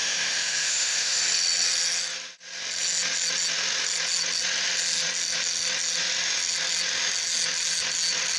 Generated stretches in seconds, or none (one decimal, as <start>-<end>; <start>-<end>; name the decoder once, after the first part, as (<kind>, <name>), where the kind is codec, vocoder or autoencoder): 0.0-1.2 (autoencoder, DAC-VAE)